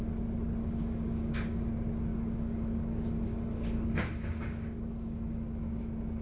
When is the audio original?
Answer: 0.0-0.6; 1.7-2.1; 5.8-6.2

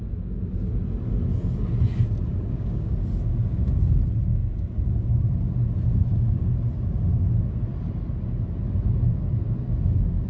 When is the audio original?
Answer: 0.0-2.3; 2.9-10.3

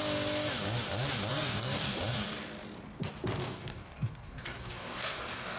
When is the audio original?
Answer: 0.0-1.3; 2.0-3.4

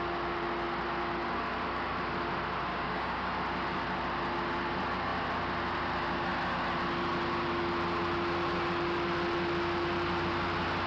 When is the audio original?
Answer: 0.0-2.7; 3.3-10.9

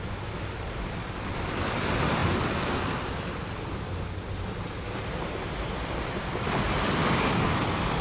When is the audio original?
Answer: 0.0-7.0

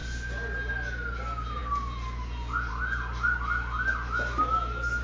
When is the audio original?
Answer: 0.0-5.0

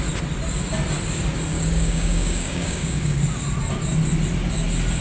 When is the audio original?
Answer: 0.0-1.5; 3.2-5.0

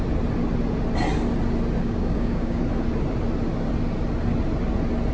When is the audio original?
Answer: 0.0-1.8; 2.6-5.1